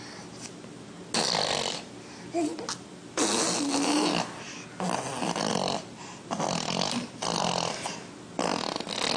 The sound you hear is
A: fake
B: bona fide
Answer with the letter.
B